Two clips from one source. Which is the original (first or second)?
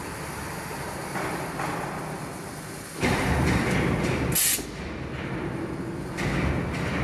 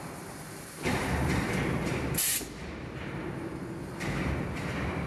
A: first